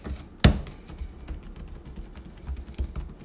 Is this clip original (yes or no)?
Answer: yes